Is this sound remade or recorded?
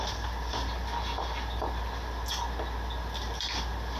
recorded